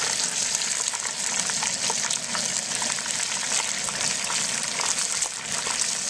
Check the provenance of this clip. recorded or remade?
recorded